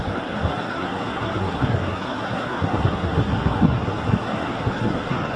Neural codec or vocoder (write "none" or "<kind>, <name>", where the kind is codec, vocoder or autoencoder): codec, SNAC